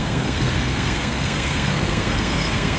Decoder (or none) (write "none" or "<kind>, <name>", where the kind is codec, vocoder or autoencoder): codec, SNAC